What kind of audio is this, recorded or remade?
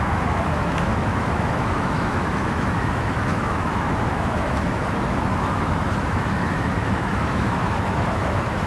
remade